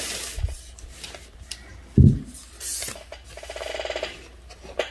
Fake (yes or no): no